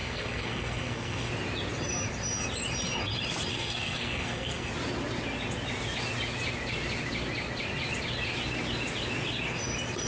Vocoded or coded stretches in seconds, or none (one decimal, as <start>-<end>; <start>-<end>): 0.0-1.3; 3.5-4.7